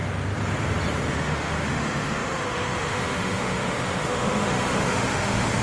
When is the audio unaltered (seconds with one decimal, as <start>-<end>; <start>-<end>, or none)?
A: 0.0-1.1